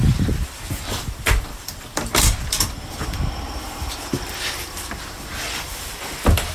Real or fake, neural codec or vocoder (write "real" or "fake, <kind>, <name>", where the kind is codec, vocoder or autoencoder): fake, vocoder, BigVGAN v2